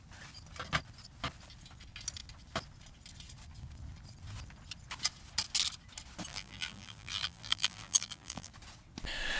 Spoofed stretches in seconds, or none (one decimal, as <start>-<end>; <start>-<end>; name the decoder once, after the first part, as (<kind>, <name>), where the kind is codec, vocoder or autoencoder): 6.3-8.5 (vocoder, BigVGAN v2)